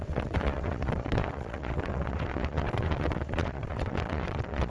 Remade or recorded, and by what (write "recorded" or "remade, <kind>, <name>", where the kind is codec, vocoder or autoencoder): remade, vocoder, WaveNeXt